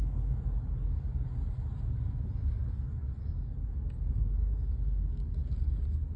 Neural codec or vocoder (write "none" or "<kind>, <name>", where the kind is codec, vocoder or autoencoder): codec, DAC